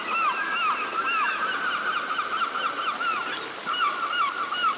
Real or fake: real